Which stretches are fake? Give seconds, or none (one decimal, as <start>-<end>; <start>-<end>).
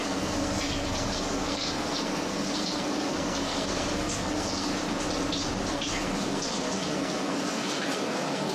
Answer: 0.0-4.7; 5.7-8.5